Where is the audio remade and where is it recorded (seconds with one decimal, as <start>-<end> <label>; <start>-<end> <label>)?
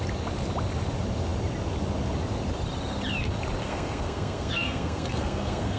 0.0-3.6 recorded; 3.6-5.8 remade